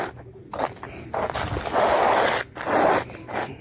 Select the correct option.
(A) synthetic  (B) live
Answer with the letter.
B